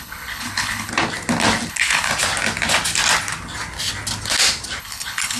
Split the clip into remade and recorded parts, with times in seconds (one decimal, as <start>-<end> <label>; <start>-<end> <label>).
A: 0.0-0.9 remade; 0.9-1.7 recorded; 1.7-2.1 remade; 2.1-4.8 recorded; 4.8-5.4 remade